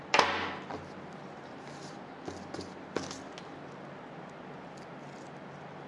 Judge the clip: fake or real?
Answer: real